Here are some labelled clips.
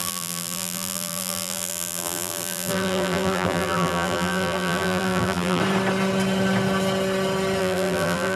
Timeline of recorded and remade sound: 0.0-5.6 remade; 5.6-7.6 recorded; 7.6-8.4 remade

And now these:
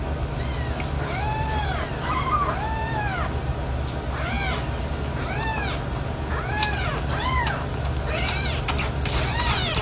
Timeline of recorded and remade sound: 0.0-9.8 recorded

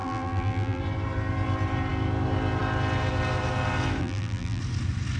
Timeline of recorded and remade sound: 0.0-0.8 remade; 0.8-4.0 recorded; 4.0-4.6 remade; 4.6-5.2 recorded